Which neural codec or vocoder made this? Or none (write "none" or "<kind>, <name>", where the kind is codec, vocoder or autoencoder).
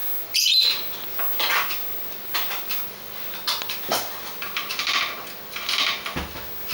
none